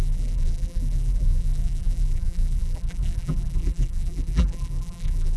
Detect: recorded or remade remade